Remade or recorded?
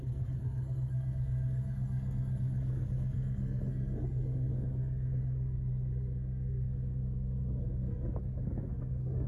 remade